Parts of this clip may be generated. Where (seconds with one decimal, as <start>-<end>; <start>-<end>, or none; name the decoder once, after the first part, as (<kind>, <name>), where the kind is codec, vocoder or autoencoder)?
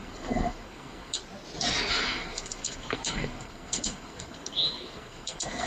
0.0-1.2 (codec, SNAC); 1.9-5.7